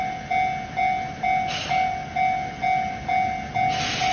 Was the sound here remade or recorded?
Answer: recorded